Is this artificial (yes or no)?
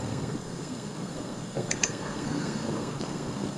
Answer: yes